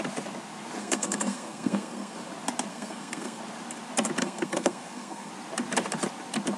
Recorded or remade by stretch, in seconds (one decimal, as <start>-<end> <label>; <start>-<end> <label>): 0.0-0.8 recorded; 0.8-2.3 remade; 2.3-2.7 recorded; 2.7-3.4 remade; 3.4-4.2 recorded; 4.2-5.3 remade; 5.3-6.6 recorded